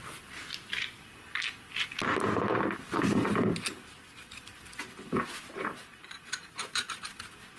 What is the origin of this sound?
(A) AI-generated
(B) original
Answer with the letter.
B